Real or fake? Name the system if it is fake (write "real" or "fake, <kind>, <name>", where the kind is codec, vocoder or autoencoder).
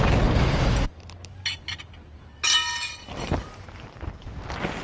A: real